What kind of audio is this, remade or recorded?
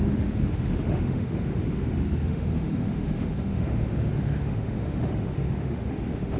remade